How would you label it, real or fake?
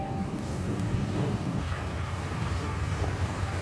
fake